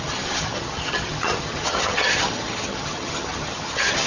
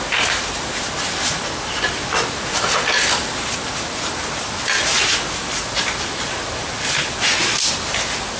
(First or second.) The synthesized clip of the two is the first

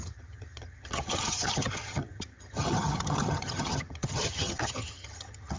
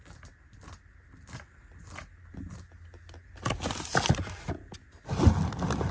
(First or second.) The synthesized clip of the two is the first